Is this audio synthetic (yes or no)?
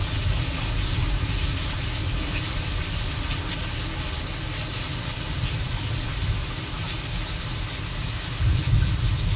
no